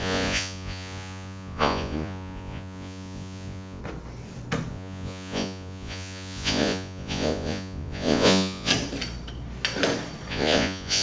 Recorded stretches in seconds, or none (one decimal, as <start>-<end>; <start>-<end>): 3.8-4.7; 8.7-10.3